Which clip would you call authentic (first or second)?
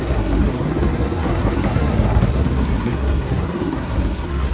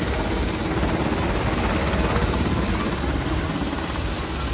second